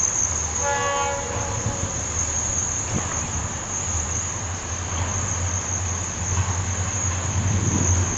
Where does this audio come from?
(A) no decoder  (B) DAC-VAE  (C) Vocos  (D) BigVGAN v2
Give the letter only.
A